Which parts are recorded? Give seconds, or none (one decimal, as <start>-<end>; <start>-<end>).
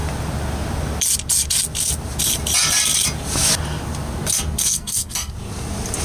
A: 0.0-4.6; 5.3-6.0